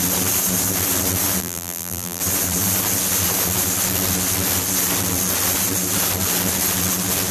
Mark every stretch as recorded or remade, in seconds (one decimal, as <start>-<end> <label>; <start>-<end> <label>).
0.0-1.4 recorded; 1.4-2.2 remade; 2.2-7.3 recorded